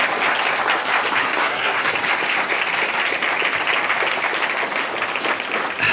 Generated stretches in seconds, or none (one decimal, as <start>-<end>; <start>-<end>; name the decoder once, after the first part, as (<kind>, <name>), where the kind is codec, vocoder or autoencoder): 1.2-1.9 (codec, SNAC)